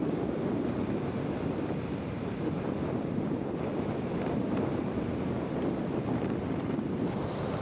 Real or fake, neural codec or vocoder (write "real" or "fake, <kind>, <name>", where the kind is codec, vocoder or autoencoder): fake, vocoder, BigVGAN v2